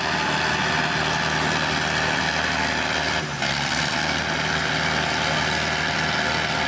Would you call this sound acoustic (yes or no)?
yes